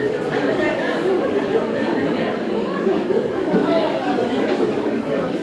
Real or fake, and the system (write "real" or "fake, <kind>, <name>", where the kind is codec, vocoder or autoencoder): fake, codec, DAC